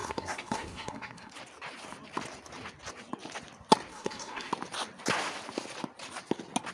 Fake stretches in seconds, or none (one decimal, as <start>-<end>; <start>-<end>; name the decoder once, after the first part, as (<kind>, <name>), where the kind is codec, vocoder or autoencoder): 0.0-1.3 (codec, SNAC); 3.9-4.5